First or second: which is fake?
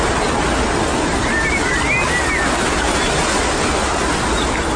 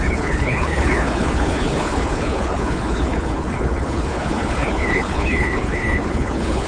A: second